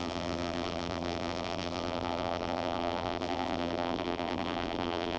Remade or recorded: remade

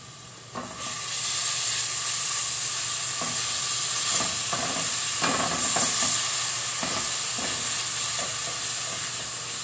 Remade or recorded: recorded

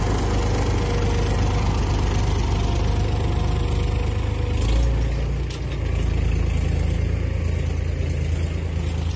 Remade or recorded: recorded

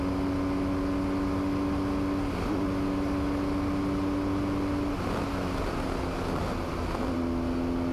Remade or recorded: recorded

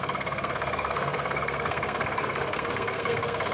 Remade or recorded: remade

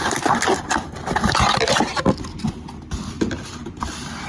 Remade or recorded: remade